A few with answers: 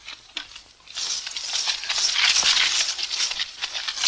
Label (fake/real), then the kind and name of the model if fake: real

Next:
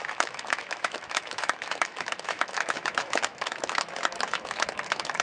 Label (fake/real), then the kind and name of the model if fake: fake, autoencoder, DAC-VAE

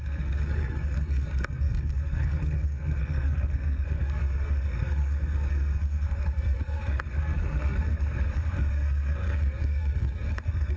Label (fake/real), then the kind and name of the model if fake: fake, codec, SNAC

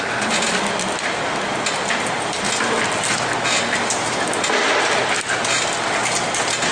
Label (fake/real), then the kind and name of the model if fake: real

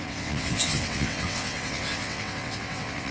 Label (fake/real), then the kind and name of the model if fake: fake, vocoder, WaveNeXt